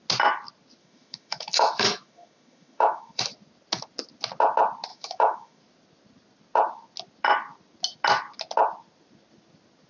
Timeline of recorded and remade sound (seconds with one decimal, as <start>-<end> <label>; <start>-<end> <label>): 0.0-0.8 recorded; 0.8-3.2 remade; 3.2-4.9 recorded; 4.9-5.6 remade; 5.6-9.9 recorded